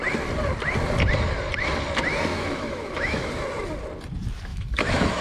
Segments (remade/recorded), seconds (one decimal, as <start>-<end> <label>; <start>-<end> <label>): 0.0-2.3 recorded; 2.3-3.3 remade; 3.3-4.5 recorded; 4.5-5.2 remade